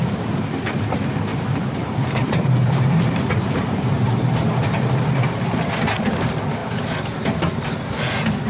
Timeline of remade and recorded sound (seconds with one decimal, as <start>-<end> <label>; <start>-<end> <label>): 0.0-0.6 remade; 0.6-1.3 recorded; 1.3-4.9 remade; 4.9-8.5 recorded